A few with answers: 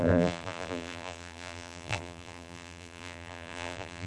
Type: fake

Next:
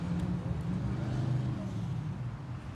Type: real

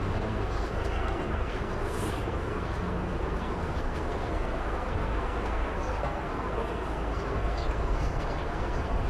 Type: fake